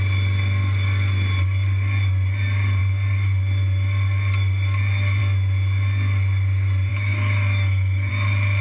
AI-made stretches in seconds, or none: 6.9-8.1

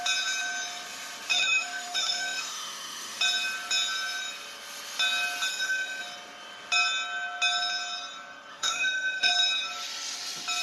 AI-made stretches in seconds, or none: 1.3-3.2; 5.5-6.0; 8.5-9.3

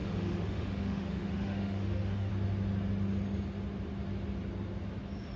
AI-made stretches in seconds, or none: 0.0-2.3

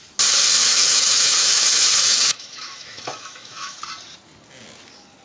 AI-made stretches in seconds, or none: 0.7-3.8

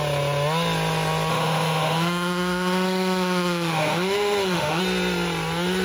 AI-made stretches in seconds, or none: 1.3-4.8

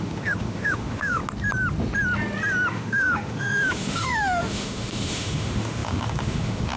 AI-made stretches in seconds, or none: 0.0-1.2; 2.7-6.8